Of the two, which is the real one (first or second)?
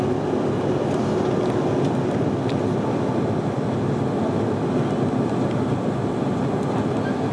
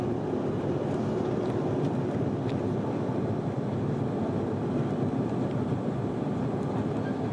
first